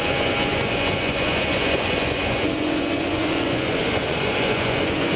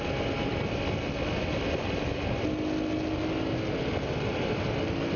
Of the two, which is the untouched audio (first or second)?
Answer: second